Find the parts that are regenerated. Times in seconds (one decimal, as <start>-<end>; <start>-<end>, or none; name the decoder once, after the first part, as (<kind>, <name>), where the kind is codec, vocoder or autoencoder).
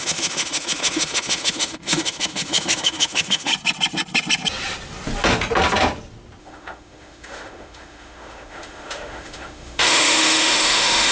0.0-3.5 (autoencoder, DAC-VAE); 6.4-11.1